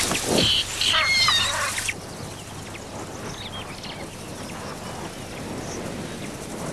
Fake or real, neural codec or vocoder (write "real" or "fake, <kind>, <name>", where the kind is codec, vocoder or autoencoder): real